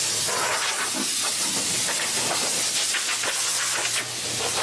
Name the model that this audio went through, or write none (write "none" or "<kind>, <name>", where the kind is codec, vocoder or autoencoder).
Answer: none